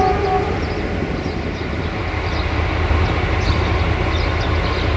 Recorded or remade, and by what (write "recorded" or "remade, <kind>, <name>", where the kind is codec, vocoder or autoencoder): recorded